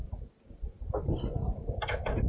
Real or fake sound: real